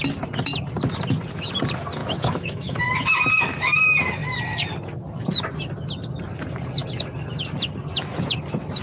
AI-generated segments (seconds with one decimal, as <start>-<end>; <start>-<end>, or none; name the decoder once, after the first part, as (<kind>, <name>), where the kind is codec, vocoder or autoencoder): 2.0-2.8 (autoencoder, DAC-VAE)